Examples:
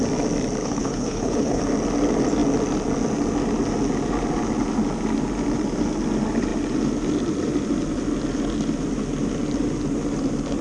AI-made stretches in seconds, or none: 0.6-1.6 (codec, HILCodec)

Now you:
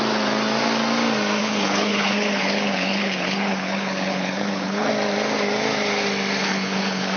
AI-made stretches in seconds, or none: 1.4-4.9 (codec, HILCodec); 6.4-7.2

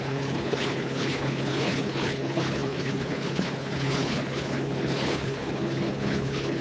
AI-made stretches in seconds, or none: 0.0-6.6 (codec, HILCodec)

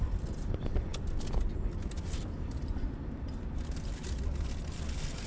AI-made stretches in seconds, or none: none

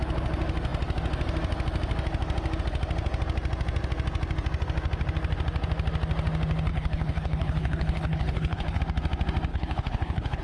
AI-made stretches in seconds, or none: 6.7-8.8 (codec, HILCodec); 9.5-10.4

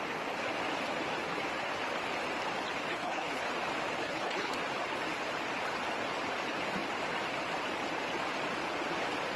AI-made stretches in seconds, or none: 2.9-3.5 (codec, HILCodec); 4.0-4.5

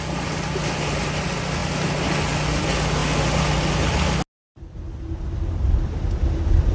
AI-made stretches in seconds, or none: none